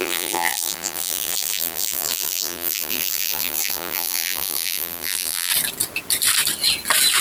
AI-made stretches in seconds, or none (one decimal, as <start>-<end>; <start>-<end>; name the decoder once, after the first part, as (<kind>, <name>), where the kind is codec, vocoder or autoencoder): 0.0-5.5 (vocoder, BigVGAN v2)